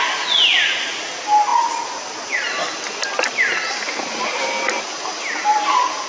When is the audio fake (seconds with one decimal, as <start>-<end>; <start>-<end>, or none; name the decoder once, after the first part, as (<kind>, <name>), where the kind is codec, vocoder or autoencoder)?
none